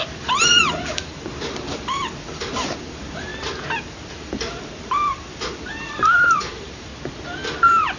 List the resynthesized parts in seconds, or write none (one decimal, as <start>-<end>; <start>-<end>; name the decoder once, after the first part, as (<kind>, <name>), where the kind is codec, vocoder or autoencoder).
0.0-3.3 (vocoder, BigVGAN v2); 3.8-6.9